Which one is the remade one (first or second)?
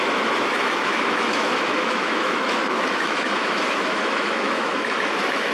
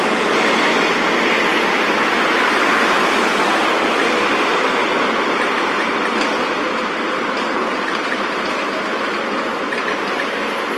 first